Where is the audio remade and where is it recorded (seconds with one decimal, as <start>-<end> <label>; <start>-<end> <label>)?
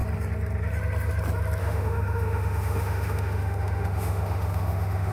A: 0.0-1.6 recorded; 1.6-5.1 remade